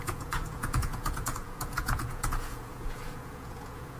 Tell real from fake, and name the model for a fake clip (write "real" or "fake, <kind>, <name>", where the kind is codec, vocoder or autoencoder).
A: fake, vocoder, Vocos